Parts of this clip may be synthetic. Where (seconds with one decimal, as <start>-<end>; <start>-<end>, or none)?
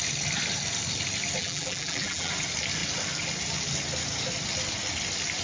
1.4-2.3